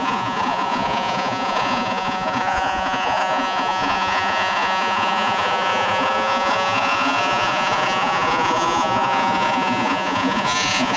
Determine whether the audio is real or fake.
fake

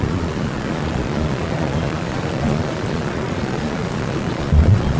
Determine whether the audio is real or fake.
fake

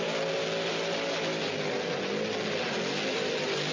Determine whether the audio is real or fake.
real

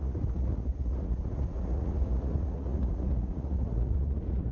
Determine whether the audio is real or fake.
fake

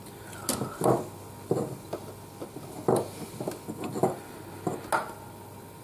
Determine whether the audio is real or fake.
real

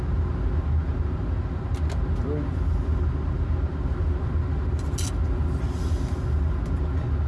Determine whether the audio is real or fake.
real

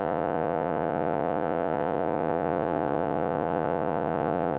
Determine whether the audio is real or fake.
fake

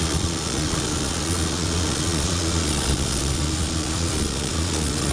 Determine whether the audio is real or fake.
fake